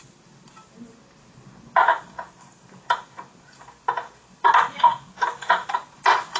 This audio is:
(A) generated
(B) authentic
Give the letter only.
B